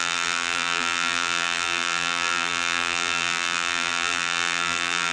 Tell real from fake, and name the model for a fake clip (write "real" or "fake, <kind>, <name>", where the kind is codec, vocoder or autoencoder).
fake, vocoder, BigVGAN v2